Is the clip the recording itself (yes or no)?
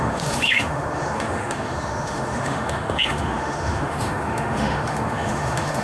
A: no